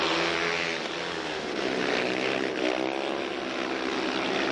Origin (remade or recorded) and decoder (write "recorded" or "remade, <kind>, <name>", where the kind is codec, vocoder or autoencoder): recorded